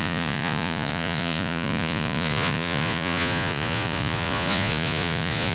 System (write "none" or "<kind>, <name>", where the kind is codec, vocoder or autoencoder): vocoder, Vocos